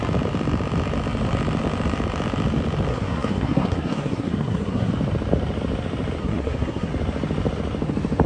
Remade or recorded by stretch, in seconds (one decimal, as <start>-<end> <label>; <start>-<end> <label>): 0.0-2.9 recorded; 2.9-4.9 remade; 4.9-6.2 recorded; 6.2-6.9 remade; 6.9-8.3 recorded